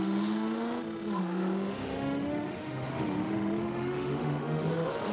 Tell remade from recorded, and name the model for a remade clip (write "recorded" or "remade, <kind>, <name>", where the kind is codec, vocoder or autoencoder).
remade, autoencoder, DAC-VAE